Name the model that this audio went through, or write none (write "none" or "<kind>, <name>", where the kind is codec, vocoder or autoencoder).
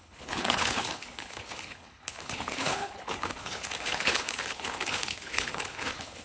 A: codec, HILCodec